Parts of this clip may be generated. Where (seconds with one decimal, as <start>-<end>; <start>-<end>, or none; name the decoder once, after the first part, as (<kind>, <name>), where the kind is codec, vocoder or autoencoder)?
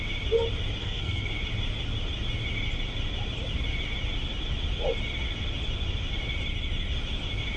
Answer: 0.8-1.3 (codec, SNAC)